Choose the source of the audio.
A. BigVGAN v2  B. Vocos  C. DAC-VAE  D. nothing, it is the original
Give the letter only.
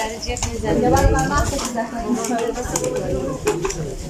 D